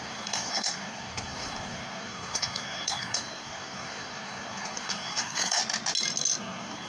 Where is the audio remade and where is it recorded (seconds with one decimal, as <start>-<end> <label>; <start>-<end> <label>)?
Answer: 0.0-5.6 remade; 5.6-6.4 recorded; 6.4-6.9 remade